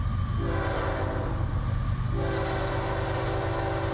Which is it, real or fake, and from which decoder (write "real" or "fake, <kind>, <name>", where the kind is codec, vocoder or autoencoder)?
real